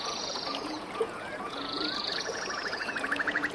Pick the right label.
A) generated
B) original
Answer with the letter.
A